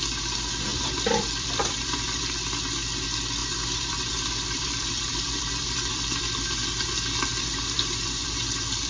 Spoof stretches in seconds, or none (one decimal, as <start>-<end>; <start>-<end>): 0.7-2.3; 3.4-6.5; 7.3-8.2